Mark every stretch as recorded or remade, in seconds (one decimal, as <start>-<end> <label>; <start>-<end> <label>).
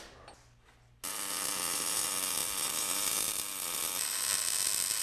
0.0-5.0 recorded